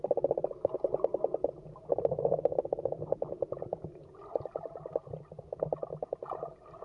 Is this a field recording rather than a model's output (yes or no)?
yes